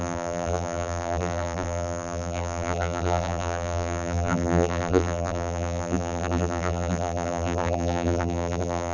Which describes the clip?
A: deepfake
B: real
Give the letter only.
A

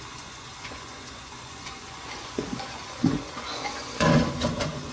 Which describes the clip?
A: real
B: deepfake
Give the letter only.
B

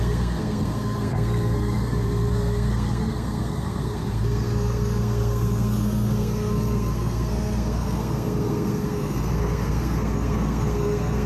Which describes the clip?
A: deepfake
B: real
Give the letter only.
A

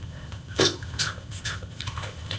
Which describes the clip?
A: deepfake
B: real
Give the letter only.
A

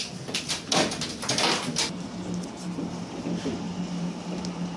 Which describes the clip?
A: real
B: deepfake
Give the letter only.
A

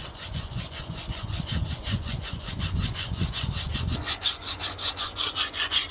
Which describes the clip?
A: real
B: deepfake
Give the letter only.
B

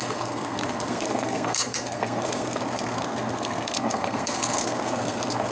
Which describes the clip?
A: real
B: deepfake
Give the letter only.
B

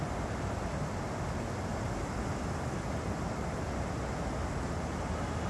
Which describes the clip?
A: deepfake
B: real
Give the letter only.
B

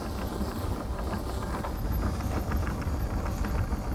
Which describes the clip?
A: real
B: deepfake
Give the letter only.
A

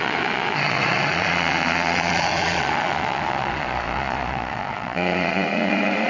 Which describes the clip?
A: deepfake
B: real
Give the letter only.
A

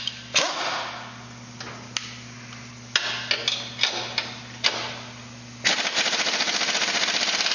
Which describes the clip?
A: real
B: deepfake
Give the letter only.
A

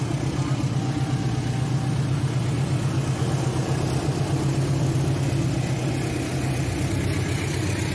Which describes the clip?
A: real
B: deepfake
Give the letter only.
A